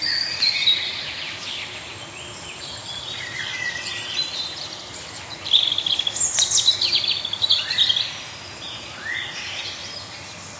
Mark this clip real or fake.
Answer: fake